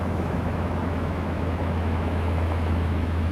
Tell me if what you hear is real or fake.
fake